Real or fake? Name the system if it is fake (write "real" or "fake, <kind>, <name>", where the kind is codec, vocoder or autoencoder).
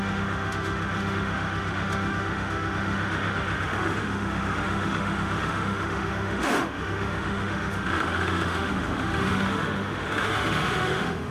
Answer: fake, autoencoder, DAC-VAE